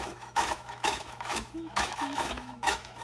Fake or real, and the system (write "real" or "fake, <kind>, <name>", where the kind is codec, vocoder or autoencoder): fake, autoencoder, DAC-VAE